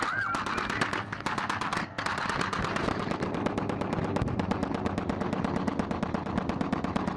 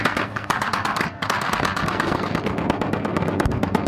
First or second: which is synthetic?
second